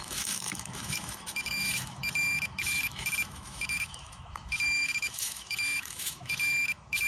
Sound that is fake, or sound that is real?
fake